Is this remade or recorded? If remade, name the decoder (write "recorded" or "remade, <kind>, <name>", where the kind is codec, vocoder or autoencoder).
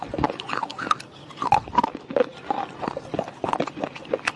recorded